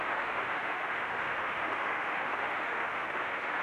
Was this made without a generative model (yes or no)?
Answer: no